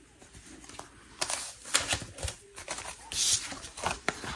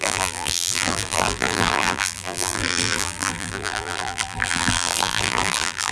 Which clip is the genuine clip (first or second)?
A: first